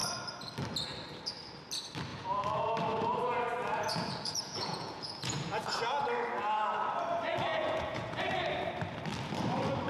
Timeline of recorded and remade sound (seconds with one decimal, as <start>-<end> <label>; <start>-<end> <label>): 0.0-2.1 recorded; 2.1-2.7 remade; 2.7-3.6 recorded; 3.6-6.0 remade; 6.0-7.5 recorded; 7.5-8.2 remade; 8.2-9.9 recorded

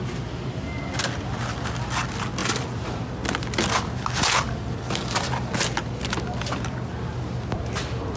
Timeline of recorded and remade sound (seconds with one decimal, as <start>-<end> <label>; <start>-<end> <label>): 0.0-8.2 recorded

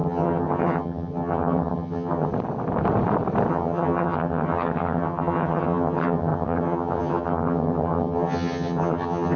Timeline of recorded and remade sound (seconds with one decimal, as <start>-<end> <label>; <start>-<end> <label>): 0.0-2.3 remade; 2.3-3.5 recorded; 3.5-9.4 remade

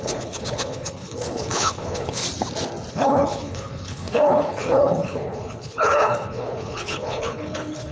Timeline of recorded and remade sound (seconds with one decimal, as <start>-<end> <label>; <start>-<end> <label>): 0.0-2.2 remade; 2.2-2.9 recorded; 2.9-7.9 remade

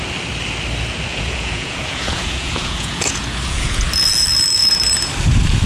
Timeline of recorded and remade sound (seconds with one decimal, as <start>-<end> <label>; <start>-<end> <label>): 0.0-1.1 recorded; 1.1-3.8 remade; 3.8-5.7 recorded

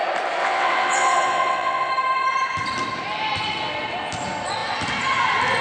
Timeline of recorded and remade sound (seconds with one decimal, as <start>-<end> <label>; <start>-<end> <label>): 0.0-0.4 recorded; 0.4-1.9 remade; 1.9-5.6 recorded